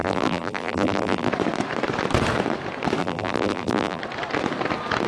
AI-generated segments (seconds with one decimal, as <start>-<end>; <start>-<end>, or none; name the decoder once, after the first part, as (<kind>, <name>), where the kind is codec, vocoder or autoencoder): 0.0-1.3 (vocoder, BigVGAN v2); 3.0-4.0